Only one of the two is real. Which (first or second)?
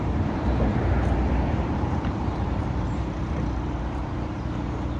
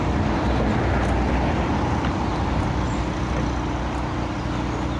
second